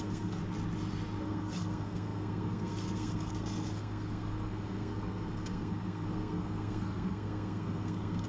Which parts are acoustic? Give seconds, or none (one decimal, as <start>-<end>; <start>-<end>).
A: 0.4-1.2